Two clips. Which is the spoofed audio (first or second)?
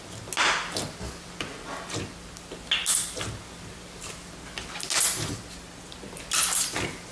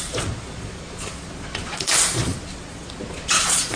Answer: second